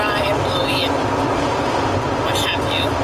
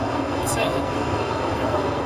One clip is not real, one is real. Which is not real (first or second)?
second